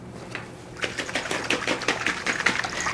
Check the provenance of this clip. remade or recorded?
recorded